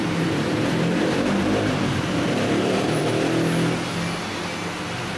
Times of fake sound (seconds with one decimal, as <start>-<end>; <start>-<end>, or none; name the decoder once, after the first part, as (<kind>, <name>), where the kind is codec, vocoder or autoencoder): 0.0-3.0 (vocoder, BigVGAN v2)